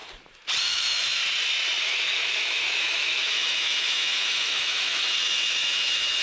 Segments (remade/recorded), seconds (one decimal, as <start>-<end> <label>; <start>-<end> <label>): 0.0-0.6 recorded; 0.6-1.2 remade; 1.2-1.8 recorded; 1.8-6.2 remade